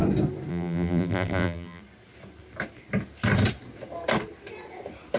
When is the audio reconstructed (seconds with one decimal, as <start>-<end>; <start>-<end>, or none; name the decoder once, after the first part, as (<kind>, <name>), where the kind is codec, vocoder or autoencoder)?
0.5-1.8 (vocoder, BigVGAN v2)